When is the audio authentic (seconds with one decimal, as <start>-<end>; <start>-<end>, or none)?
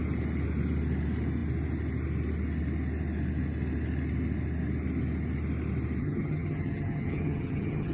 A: 0.0-6.0